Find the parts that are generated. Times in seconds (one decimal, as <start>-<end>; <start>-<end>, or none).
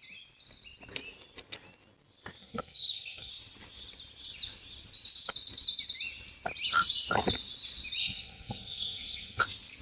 2.4-3.3; 8.0-9.4